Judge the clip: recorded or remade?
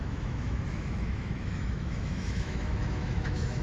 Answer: remade